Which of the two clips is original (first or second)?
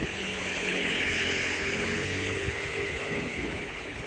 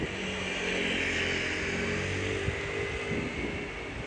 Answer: second